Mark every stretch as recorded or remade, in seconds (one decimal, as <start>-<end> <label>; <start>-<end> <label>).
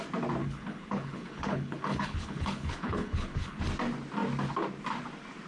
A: 0.0-0.4 recorded; 0.4-3.6 remade; 3.6-5.5 recorded